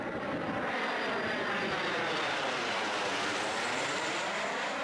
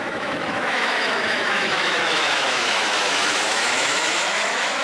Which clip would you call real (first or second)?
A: first